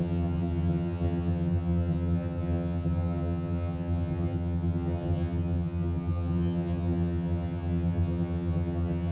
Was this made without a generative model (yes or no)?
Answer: no